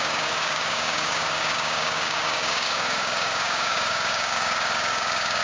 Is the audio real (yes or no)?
no